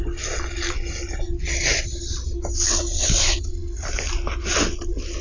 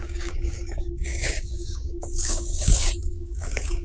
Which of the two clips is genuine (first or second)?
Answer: first